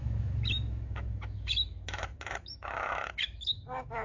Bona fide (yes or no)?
no